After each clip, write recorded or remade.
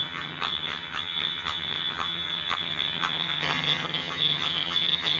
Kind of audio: remade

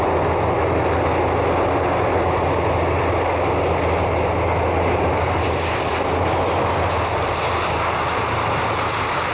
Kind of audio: recorded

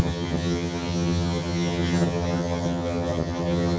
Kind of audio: remade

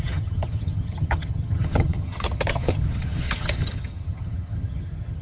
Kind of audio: remade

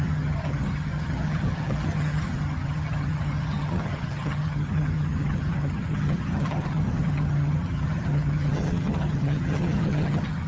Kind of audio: remade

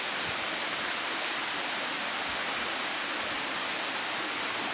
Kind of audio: recorded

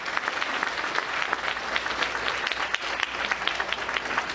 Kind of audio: recorded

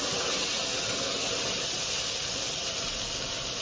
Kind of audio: recorded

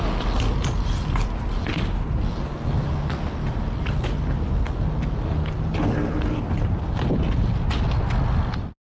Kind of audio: recorded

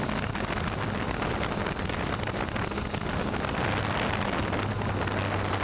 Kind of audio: recorded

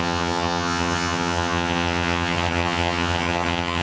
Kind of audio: remade